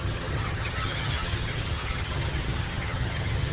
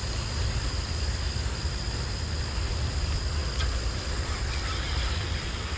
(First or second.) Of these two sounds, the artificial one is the first